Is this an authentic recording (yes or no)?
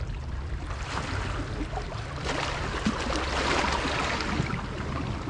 yes